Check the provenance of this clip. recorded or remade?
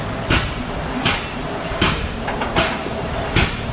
remade